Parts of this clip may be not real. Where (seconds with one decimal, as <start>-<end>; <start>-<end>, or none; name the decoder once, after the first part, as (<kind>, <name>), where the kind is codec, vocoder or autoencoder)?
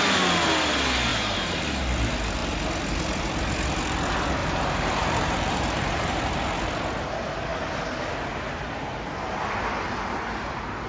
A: 1.1-1.6 (vocoder, BigVGAN v2); 4.4-6.2